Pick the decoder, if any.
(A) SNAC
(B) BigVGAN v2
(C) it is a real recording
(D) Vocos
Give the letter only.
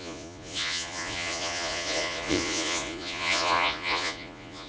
D